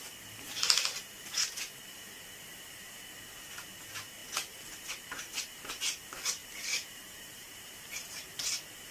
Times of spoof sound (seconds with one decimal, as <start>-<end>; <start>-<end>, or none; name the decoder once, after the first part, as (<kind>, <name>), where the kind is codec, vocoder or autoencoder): 6.4-8.5 (vocoder, BigVGAN v2)